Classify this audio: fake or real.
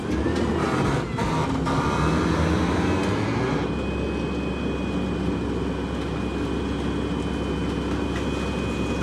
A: real